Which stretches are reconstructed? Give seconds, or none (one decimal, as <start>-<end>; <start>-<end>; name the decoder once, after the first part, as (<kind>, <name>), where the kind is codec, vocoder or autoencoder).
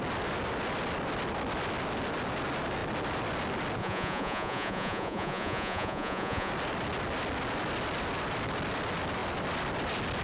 3.8-6.5 (vocoder, Vocos)